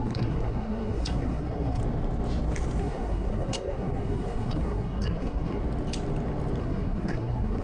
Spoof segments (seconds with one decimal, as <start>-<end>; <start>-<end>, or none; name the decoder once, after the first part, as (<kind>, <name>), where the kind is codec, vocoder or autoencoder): 0.0-1.8 (codec, SNAC); 2.8-5.6; 6.6-7.6